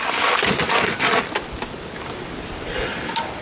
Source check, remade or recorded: recorded